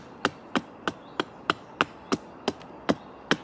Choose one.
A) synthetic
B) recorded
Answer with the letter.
B